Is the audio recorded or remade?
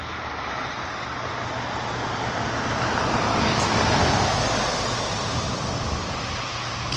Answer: recorded